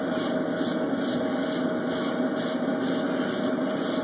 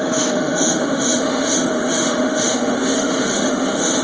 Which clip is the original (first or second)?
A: first